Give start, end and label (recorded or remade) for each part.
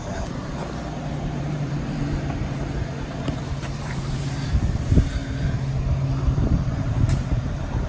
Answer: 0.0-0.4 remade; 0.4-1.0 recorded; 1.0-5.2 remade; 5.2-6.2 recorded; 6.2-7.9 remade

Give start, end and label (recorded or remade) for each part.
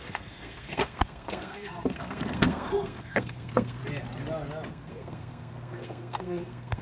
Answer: 0.0-3.8 remade; 3.8-4.7 recorded; 4.7-6.8 remade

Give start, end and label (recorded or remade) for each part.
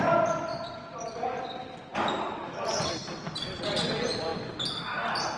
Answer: 0.0-4.3 remade; 4.3-5.4 recorded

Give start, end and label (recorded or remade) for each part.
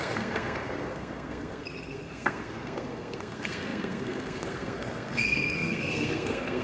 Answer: 0.0-6.6 remade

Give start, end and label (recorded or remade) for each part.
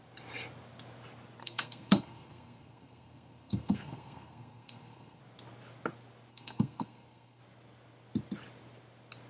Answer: 0.0-1.4 recorded; 1.4-5.2 remade; 5.2-6.3 recorded; 6.3-7.4 remade; 7.4-9.3 recorded